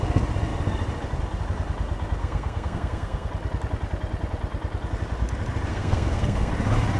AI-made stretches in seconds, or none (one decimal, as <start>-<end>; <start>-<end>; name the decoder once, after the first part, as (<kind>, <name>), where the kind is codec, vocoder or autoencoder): 2.2-3.3 (codec, SNAC); 5.7-6.5